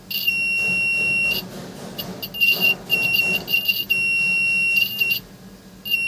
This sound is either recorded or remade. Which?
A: recorded